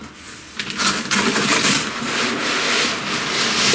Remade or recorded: recorded